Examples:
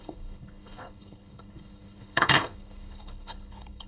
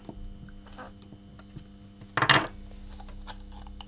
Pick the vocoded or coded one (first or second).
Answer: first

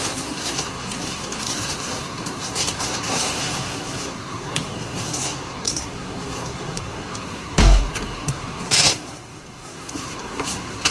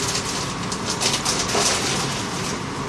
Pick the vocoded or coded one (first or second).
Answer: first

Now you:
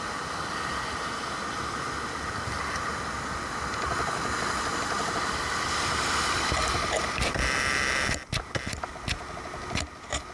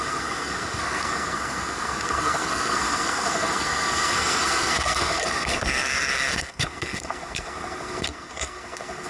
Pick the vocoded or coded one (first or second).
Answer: second